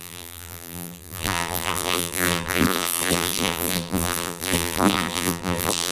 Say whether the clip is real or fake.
fake